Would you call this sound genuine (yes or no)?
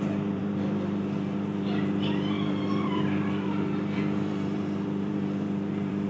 no